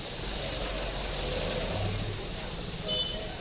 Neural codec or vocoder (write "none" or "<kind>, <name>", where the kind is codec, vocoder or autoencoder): none